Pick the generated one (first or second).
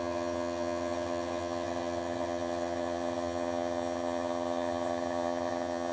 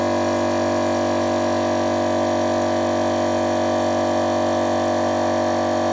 first